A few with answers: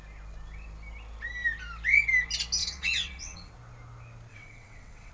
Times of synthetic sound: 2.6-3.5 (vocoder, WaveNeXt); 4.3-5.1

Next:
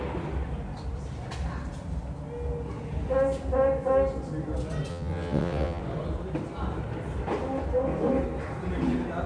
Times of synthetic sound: 4.9-5.8 (vocoder, WaveNeXt)

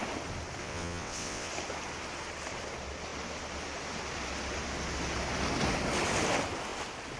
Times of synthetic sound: 0.6-1.5 (vocoder, WaveNeXt)

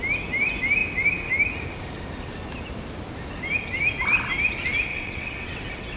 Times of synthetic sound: 4.9-6.0 (vocoder, WaveNeXt)

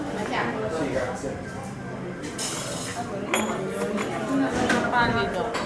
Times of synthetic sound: none